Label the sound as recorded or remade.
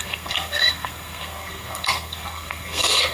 remade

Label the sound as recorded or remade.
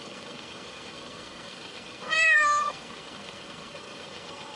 remade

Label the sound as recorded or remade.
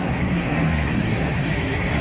remade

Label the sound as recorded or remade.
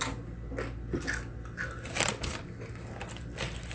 recorded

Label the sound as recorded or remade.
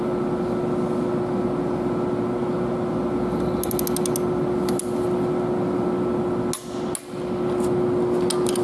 recorded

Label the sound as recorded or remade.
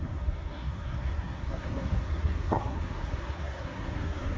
remade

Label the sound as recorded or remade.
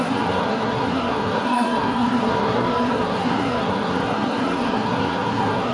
remade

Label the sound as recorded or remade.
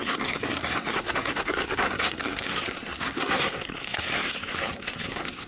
remade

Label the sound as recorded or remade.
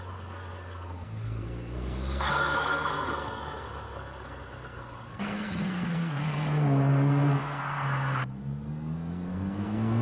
remade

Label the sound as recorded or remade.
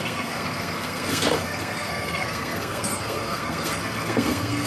remade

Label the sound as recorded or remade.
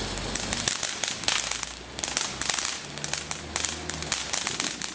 recorded